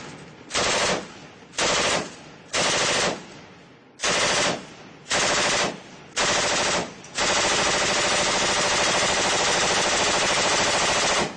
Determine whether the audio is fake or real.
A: real